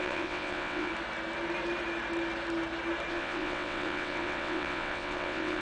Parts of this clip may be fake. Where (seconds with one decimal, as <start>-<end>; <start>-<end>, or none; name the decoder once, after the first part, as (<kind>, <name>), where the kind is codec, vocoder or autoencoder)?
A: 0.0-0.9 (vocoder, WaveNeXt); 3.1-5.6